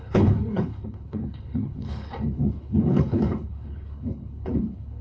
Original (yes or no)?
no